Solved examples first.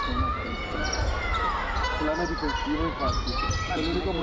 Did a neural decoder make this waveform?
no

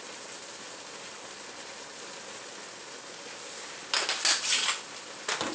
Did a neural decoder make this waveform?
no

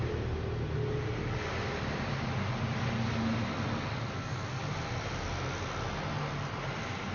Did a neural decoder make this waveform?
no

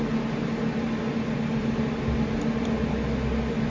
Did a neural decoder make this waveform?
no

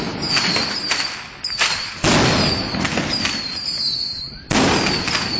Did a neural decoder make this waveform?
no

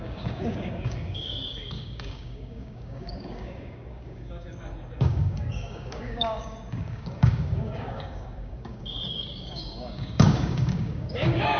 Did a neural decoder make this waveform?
yes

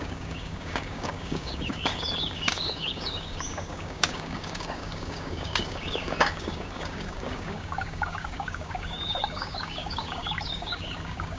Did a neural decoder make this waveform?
yes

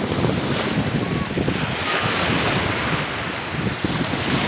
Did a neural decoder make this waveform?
no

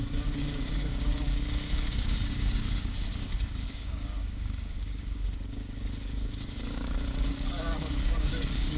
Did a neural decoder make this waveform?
yes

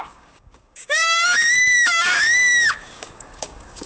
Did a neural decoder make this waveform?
yes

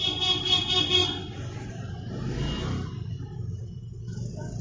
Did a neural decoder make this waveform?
no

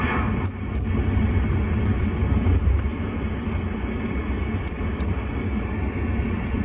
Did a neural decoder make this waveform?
no